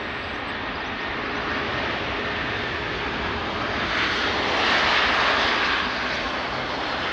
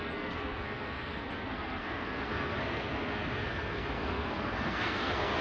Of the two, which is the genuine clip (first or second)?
first